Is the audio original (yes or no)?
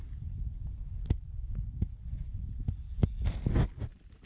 yes